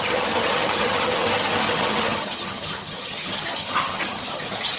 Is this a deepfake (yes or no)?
yes